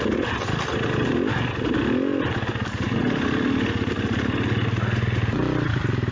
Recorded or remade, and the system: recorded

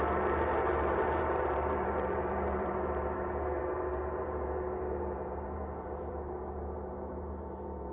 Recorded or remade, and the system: remade, vocoder, BigVGAN v2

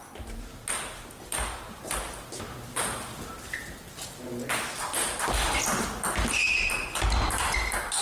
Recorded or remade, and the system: recorded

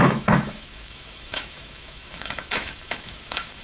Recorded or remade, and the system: remade, autoencoder, DAC-VAE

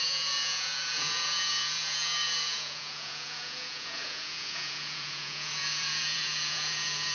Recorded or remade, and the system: remade, vocoder, Vocos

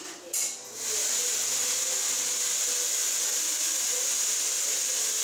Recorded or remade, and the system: recorded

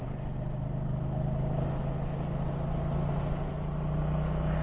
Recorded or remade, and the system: recorded